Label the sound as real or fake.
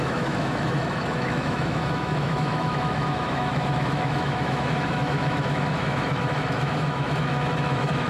fake